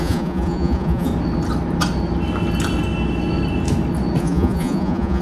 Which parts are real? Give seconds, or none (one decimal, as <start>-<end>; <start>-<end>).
1.1-4.2